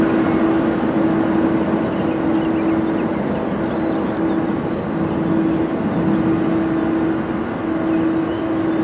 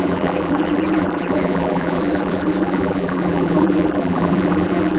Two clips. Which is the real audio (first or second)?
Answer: first